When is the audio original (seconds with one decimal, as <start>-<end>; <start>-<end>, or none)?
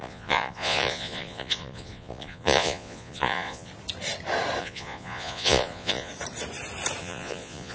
3.7-4.6; 6.1-7.0